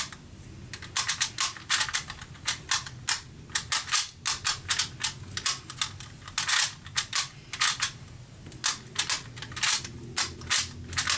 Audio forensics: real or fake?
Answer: real